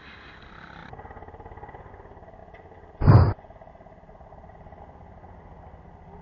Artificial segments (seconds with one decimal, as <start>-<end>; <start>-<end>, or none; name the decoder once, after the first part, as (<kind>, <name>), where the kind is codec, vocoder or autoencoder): none